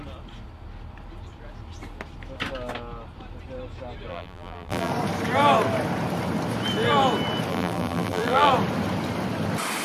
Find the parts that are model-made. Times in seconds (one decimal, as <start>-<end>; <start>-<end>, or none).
4.1-4.9; 7.5-8.5